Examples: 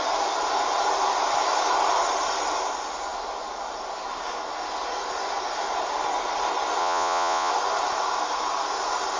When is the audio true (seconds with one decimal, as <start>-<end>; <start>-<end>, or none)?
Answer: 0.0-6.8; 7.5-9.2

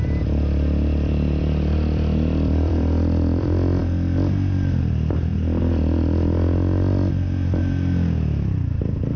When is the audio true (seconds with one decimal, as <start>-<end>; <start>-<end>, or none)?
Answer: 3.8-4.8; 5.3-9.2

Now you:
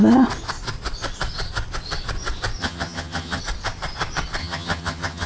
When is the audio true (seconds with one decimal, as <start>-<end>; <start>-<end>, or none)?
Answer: 0.0-2.6; 3.4-4.4

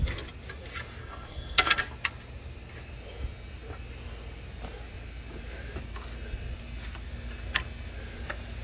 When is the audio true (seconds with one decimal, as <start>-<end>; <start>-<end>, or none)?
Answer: 0.0-1.0; 1.8-8.6

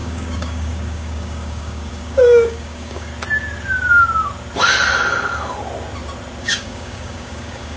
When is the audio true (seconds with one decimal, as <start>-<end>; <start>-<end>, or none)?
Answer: 3.1-6.4